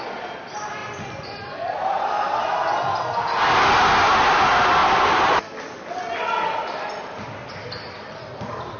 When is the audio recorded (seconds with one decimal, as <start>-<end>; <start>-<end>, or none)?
0.0-8.8